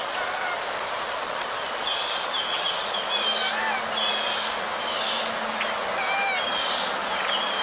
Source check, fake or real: real